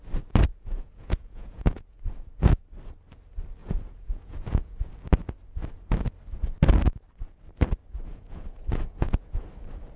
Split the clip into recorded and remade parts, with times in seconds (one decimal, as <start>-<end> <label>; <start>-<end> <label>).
0.0-0.5 recorded; 0.5-2.6 remade; 2.6-3.6 recorded; 3.6-4.9 remade; 4.9-8.1 recorded; 8.1-9.5 remade; 9.5-10.0 recorded